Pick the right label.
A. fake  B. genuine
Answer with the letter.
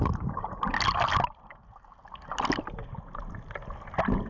B